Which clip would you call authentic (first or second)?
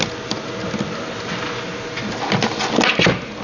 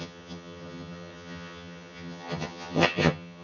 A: first